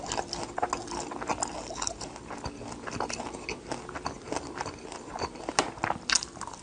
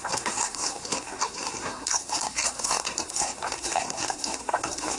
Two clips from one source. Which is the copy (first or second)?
second